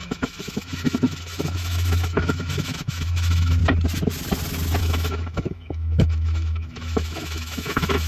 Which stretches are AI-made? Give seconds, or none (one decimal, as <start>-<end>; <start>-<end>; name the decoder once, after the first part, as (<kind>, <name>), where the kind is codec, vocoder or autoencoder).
0.0-3.6 (autoencoder, DAC-VAE); 4.8-8.1